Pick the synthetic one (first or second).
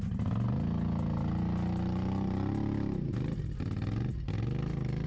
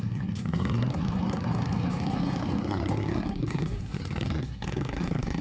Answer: second